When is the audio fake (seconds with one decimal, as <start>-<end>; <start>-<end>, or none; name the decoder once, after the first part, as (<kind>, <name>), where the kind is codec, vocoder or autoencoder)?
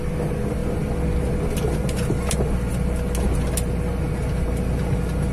none